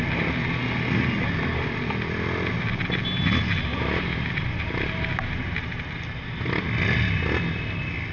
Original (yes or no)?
yes